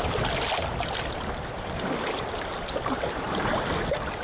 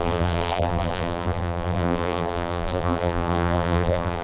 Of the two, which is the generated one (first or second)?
second